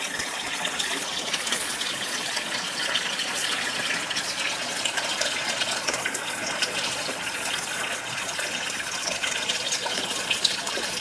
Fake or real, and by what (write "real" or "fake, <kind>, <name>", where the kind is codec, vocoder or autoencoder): fake, vocoder, Vocos